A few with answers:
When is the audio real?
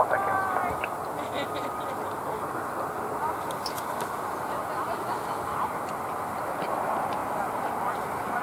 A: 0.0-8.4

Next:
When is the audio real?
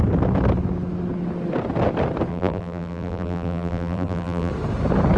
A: 0.0-2.3; 4.5-5.2